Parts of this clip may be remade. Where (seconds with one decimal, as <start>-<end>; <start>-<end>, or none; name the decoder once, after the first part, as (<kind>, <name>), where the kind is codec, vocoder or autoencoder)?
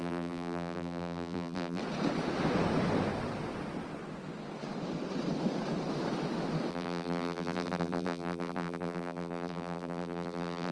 0.0-1.8 (vocoder, BigVGAN v2); 6.7-10.7